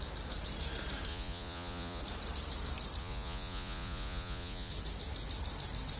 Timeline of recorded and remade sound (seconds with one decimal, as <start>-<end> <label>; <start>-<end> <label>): 0.0-1.1 recorded; 1.1-2.0 remade; 2.0-3.0 recorded; 3.0-4.7 remade; 4.7-6.0 recorded

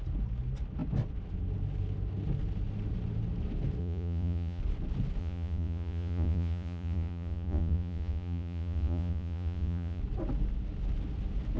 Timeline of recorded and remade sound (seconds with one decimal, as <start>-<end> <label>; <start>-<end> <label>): 0.0-3.8 recorded; 3.8-4.6 remade; 4.6-5.2 recorded; 5.2-10.0 remade; 10.0-11.6 recorded

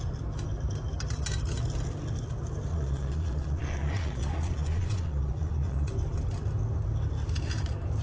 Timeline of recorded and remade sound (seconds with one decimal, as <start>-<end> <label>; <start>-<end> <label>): 0.0-2.7 recorded; 2.7-5.9 remade; 5.9-8.0 recorded